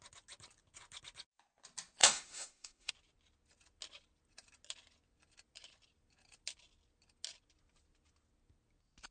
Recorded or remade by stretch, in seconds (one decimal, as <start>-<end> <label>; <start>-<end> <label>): 0.0-2.0 recorded; 2.0-2.9 remade; 2.9-9.1 recorded